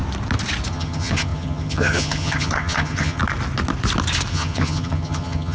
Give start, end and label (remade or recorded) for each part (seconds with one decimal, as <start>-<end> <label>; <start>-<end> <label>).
0.0-0.7 recorded; 0.7-3.2 remade; 3.2-4.3 recorded; 4.3-5.5 remade